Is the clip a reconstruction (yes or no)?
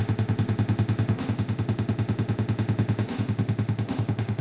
yes